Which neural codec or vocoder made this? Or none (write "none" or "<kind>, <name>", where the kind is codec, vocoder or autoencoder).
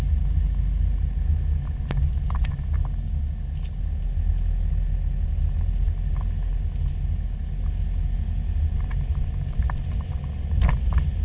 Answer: none